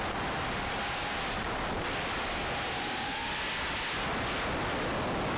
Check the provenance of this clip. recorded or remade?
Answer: recorded